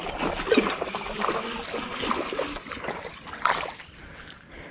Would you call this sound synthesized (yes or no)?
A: no